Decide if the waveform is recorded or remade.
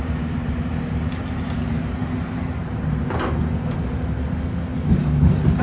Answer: recorded